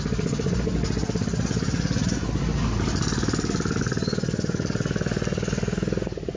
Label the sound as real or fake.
real